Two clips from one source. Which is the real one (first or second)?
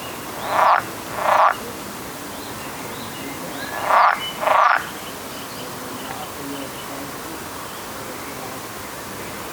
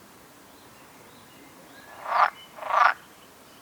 first